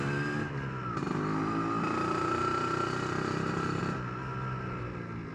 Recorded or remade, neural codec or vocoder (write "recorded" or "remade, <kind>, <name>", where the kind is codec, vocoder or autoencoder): recorded